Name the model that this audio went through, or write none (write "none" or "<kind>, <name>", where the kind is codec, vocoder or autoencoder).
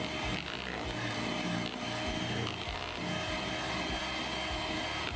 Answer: none